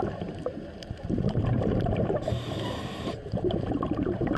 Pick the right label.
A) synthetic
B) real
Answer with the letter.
A